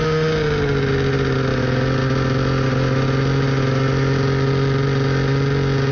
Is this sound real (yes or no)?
yes